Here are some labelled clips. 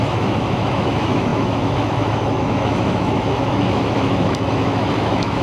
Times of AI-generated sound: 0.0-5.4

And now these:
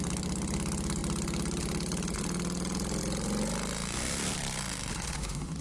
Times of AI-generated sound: 4.9-5.6